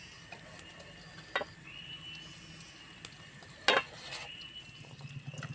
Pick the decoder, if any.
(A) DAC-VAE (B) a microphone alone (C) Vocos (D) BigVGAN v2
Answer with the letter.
B